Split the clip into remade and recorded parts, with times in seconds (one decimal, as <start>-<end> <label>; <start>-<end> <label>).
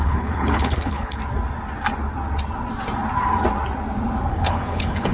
0.0-1.2 remade; 1.2-4.3 recorded; 4.3-5.1 remade